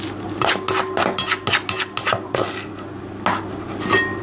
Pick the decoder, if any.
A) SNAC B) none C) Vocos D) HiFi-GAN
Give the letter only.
B